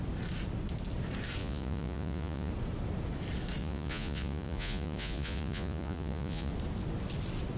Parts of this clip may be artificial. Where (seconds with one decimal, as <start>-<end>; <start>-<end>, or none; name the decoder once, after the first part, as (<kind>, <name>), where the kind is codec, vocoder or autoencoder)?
1.4-2.5 (vocoder, Vocos); 3.6-6.5